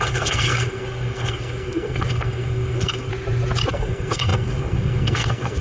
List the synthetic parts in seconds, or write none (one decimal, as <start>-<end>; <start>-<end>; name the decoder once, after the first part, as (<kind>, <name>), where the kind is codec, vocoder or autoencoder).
0.0-3.1 (codec, SNAC); 3.7-5.6